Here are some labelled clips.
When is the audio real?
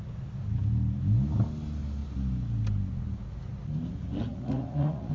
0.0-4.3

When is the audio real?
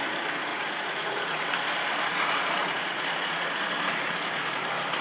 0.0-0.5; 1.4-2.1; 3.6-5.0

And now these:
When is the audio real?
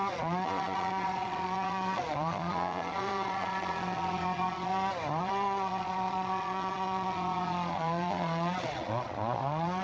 4.7-5.2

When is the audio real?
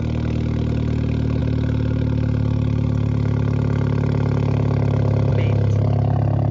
0.0-6.5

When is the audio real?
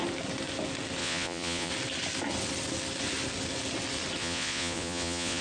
0.0-1.0; 1.7-4.2